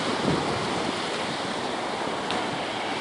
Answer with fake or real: real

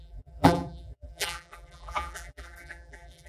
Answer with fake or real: fake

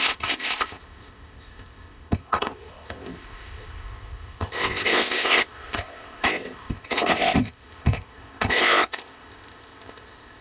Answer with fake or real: fake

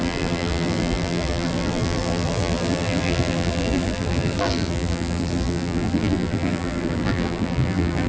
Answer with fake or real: fake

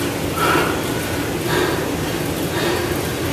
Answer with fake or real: real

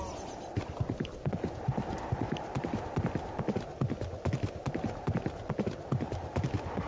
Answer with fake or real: real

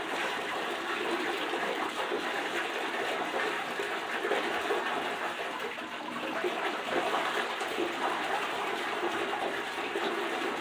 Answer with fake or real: fake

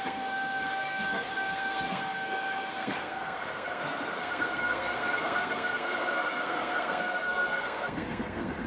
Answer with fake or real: fake